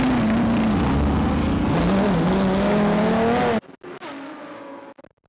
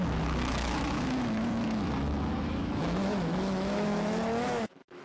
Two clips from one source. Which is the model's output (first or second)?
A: second